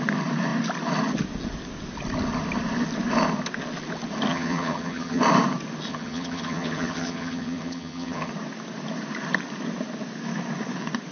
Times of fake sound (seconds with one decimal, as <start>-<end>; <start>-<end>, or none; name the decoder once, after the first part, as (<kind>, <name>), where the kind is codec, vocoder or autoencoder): 4.3-5.2 (vocoder, HiFi-GAN); 5.9-8.3